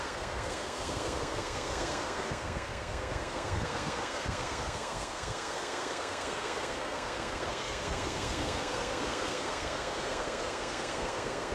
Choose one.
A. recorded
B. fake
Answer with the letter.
B